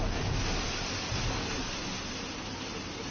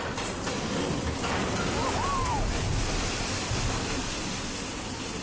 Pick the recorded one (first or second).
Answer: first